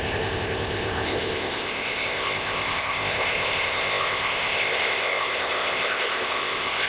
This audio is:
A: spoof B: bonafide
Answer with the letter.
A